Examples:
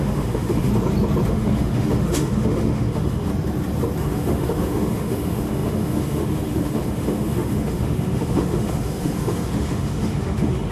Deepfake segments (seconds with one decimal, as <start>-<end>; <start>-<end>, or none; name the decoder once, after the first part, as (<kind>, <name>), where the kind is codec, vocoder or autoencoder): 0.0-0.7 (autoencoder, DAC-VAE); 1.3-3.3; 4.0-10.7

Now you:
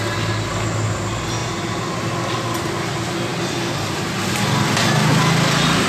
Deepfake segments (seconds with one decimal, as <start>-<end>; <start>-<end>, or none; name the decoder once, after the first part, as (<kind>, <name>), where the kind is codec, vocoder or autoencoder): none

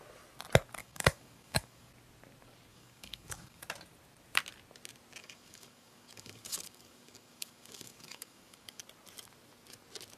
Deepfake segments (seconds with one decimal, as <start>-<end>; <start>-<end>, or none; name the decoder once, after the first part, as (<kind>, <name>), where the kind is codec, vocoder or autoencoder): 0.8-1.9 (codec, DAC); 2.7-3.6; 5.2-8.8

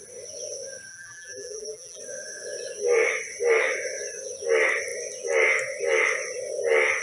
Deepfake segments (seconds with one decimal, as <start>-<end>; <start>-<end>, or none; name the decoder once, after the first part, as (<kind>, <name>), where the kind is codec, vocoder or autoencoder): 0.9-2.0 (vocoder, BigVGAN v2)